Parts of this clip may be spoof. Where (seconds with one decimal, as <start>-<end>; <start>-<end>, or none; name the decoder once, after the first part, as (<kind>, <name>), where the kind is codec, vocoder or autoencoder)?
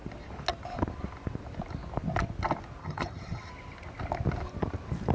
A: 2.8-3.5 (vocoder, HiFi-GAN)